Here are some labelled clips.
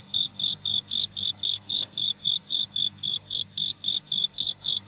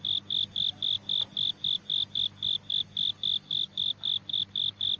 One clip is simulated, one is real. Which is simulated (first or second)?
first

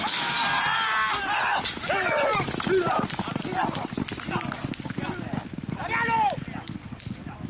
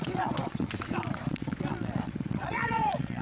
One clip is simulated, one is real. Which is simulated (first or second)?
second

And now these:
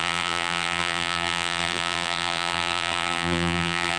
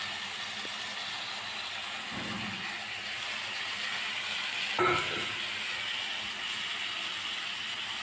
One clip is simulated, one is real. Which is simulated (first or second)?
first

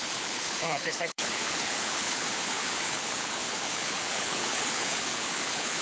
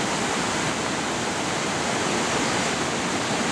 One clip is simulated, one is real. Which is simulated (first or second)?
first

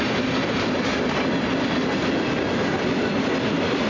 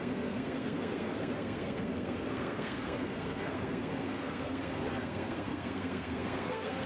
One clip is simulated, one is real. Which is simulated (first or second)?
second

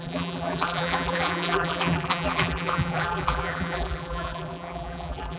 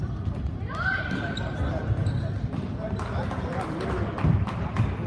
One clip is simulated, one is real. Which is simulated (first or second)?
first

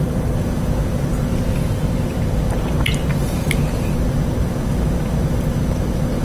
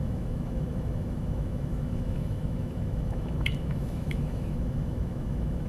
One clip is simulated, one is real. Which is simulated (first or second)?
second